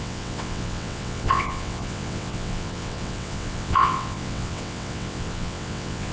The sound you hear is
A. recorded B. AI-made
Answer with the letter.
B